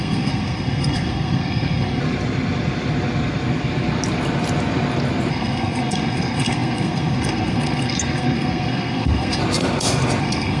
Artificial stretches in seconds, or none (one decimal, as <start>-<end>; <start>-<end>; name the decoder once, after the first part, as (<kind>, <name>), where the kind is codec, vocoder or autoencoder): 0.0-2.0 (codec, SNAC); 5.3-9.4; 10.2-10.6